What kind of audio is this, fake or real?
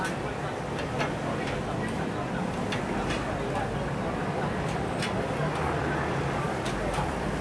real